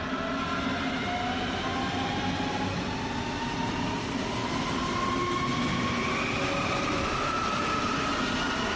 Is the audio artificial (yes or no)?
no